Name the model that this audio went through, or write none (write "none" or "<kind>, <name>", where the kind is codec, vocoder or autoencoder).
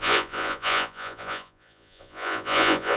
vocoder, Vocos